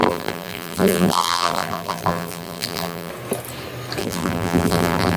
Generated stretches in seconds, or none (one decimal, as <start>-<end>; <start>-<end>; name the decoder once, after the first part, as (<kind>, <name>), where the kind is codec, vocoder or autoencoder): 0.0-3.1 (vocoder, BigVGAN v2); 4.0-5.2

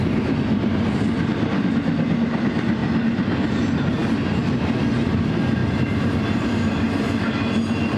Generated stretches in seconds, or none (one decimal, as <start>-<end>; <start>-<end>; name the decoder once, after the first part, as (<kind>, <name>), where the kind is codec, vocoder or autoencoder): 5.6-6.9 (vocoder, BigVGAN v2)

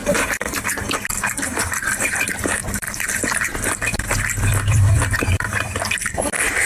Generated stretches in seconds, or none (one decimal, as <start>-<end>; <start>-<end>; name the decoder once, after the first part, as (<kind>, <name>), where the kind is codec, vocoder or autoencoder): 0.0-0.6 (vocoder, BigVGAN v2); 1.8-5.8

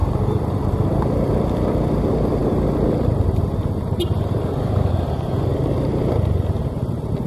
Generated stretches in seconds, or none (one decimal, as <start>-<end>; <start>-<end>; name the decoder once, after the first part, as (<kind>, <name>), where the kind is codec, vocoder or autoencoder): 0.0-1.4 (vocoder, BigVGAN v2); 2.4-5.0; 5.5-6.0

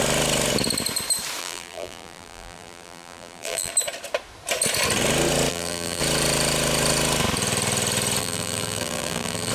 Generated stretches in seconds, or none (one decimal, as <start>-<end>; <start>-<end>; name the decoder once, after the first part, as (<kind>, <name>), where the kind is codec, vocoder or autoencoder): 1.4-3.7 (vocoder, BigVGAN v2); 5.5-6.0; 8.2-9.5

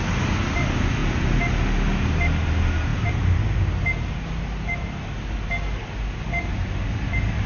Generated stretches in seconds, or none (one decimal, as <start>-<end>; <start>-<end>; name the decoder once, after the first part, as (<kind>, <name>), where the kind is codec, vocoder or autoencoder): none

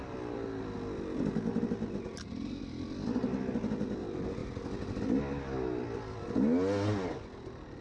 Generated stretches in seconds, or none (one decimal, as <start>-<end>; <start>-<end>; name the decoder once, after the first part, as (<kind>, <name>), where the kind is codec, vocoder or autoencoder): none